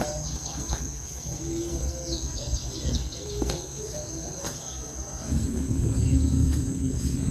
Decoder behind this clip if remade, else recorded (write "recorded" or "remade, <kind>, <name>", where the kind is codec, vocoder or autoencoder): remade, codec, SNAC